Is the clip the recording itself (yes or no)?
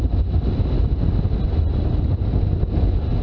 yes